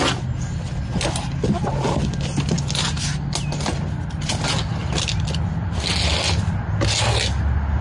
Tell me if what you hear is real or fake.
real